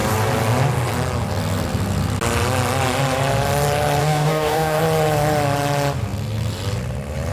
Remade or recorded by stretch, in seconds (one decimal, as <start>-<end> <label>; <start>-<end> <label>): 0.0-4.0 recorded; 4.0-4.8 remade; 4.8-7.3 recorded